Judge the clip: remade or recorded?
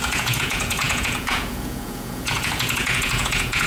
remade